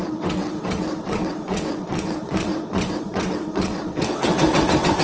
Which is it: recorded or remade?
remade